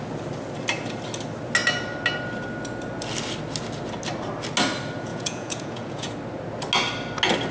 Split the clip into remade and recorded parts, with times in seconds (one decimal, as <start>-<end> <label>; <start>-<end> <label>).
0.0-5.1 recorded; 5.1-6.1 remade; 6.1-7.5 recorded

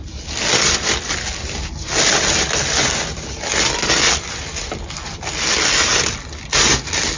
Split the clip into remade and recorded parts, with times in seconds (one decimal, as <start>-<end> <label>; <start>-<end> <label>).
0.0-7.2 recorded

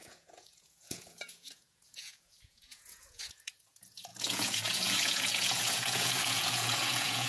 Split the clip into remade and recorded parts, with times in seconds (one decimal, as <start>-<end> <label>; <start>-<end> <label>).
0.0-7.3 remade

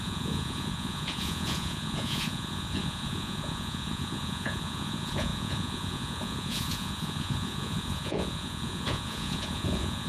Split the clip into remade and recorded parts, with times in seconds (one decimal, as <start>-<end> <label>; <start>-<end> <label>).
0.0-10.1 remade

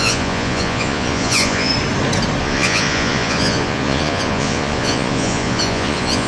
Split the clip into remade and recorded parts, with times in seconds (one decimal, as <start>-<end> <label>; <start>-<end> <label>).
0.0-1.7 remade; 1.7-2.4 recorded; 2.4-6.3 remade